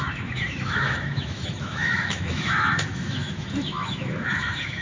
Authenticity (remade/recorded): remade